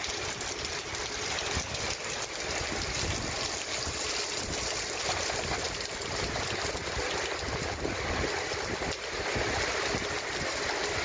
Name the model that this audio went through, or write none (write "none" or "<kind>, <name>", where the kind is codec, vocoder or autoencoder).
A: none